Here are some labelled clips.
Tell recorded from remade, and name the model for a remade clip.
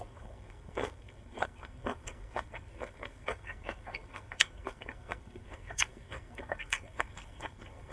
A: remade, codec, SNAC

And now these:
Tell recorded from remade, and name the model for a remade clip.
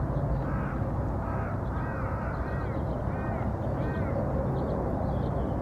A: recorded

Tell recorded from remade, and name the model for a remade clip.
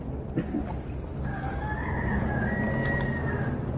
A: recorded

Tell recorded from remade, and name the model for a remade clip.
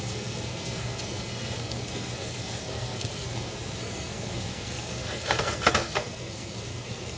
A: remade, codec, SNAC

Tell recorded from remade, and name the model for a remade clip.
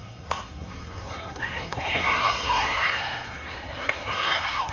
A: remade, codec, SNAC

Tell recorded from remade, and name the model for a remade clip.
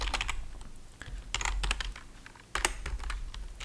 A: recorded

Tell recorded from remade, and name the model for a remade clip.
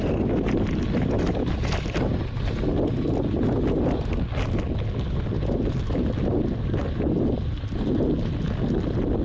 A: recorded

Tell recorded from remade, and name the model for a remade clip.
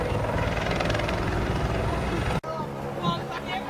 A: recorded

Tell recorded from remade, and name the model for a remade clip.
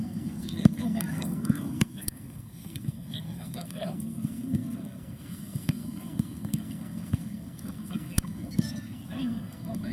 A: remade, codec, SNAC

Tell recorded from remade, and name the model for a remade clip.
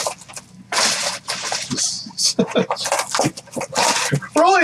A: recorded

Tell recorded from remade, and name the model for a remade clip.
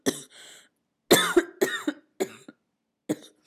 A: recorded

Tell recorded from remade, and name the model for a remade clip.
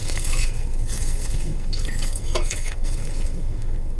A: remade, codec, SNAC